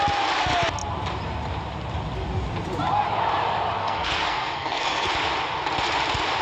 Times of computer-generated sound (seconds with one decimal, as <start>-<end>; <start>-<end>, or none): 3.8-5.1